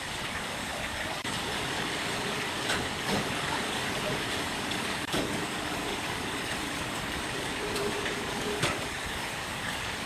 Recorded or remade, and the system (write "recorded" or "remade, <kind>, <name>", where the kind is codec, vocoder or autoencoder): remade, codec, DAC